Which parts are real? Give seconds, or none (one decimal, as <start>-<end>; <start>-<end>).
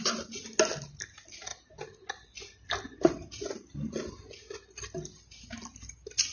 0.0-6.3